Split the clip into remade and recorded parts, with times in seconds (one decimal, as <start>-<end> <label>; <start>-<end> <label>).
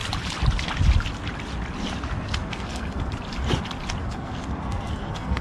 0.0-2.4 recorded; 2.4-3.1 remade; 3.1-4.0 recorded; 4.0-5.4 remade